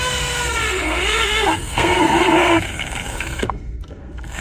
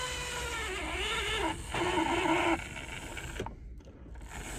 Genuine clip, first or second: second